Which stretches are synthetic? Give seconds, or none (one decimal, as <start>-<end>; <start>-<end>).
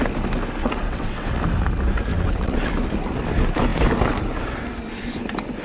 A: 0.6-1.4; 2.1-2.7